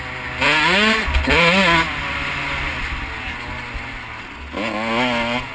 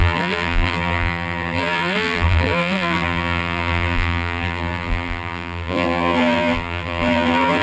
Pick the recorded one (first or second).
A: first